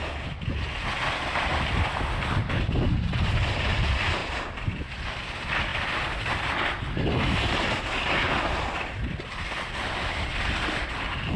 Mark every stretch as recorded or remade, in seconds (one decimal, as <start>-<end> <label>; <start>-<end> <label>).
0.0-11.4 recorded